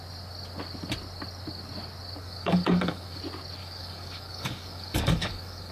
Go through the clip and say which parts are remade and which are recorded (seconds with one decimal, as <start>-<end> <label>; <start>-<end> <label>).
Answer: 0.0-2.2 recorded; 2.2-3.2 remade; 3.2-3.6 recorded; 3.6-5.7 remade